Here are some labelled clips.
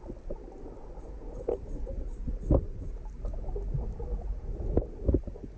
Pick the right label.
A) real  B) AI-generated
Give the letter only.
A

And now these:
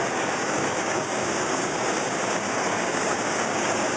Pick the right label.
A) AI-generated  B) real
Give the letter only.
A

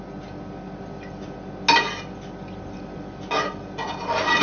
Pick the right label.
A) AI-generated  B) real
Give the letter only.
B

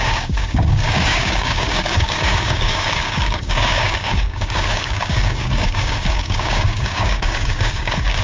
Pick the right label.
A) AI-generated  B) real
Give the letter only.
A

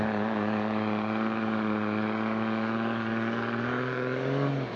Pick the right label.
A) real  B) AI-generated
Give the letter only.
B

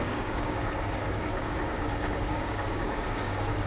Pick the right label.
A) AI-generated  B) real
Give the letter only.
A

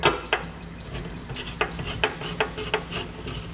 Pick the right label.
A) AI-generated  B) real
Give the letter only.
B